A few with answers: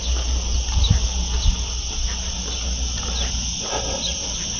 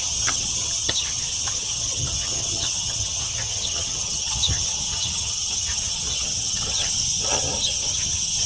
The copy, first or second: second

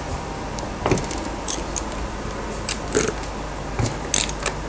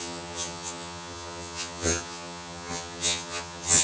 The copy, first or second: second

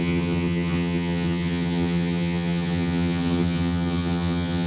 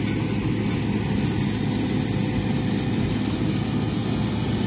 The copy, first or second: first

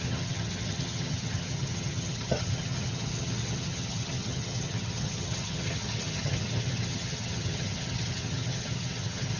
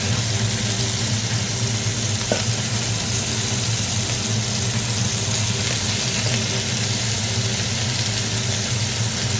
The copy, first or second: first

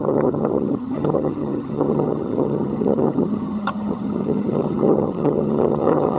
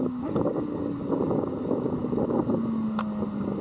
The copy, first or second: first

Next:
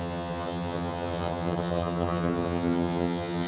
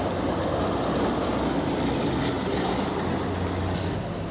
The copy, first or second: first